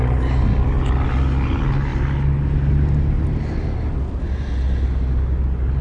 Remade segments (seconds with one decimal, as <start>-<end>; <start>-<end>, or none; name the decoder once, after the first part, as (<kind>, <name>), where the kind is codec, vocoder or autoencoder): none